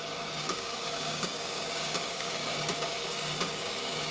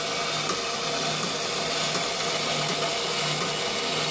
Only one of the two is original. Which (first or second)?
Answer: second